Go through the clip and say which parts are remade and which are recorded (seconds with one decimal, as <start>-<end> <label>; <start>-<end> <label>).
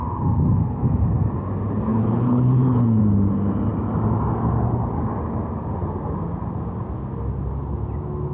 0.0-1.9 recorded; 1.9-3.0 remade; 3.0-8.3 recorded